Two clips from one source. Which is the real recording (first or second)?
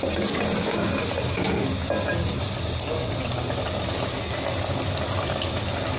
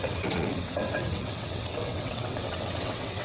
first